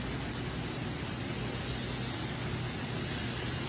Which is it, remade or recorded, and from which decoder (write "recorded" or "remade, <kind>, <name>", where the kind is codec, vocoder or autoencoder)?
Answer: recorded